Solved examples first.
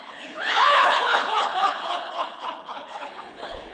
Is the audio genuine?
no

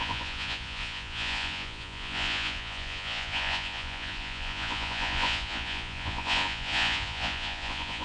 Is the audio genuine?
no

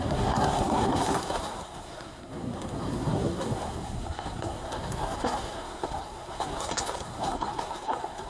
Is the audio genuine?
no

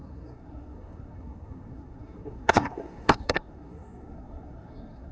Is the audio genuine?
no